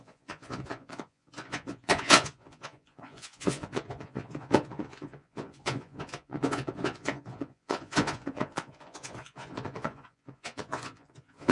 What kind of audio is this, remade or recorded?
remade